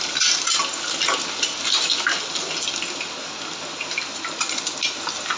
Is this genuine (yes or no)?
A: yes